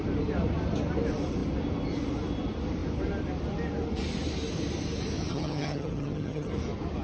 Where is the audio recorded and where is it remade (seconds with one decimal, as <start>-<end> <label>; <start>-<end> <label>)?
0.0-5.3 recorded; 5.3-6.5 remade; 6.5-7.0 recorded